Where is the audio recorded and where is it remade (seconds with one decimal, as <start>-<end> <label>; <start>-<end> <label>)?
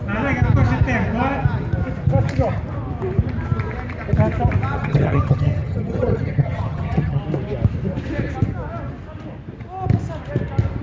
0.0-4.7 recorded; 4.7-7.2 remade; 7.2-10.8 recorded